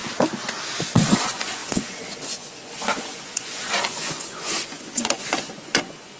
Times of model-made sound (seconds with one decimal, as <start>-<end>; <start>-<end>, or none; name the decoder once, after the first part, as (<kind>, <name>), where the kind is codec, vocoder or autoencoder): 0.9-6.2 (vocoder, Vocos)